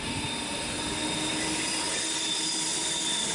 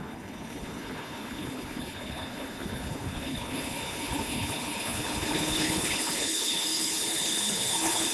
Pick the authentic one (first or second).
first